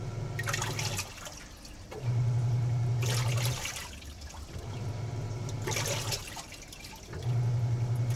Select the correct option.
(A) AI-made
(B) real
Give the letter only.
B